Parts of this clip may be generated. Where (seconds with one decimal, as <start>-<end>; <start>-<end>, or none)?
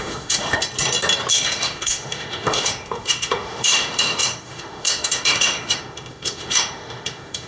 0.0-0.6; 1.3-7.5